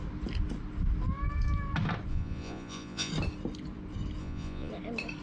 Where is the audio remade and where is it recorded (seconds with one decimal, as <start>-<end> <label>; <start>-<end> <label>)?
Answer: 0.0-2.1 recorded; 2.1-3.1 remade; 3.1-4.2 recorded; 4.2-4.7 remade; 4.7-5.2 recorded